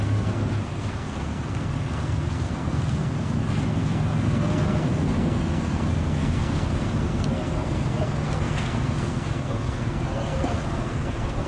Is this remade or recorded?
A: remade